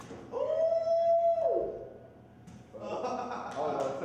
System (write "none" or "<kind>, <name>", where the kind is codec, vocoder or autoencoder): none